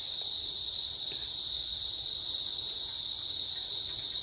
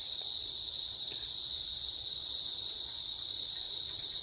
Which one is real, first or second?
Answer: first